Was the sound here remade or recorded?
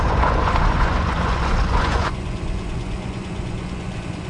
remade